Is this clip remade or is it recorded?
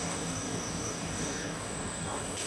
remade